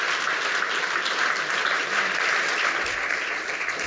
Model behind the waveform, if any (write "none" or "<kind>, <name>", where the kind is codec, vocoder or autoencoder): none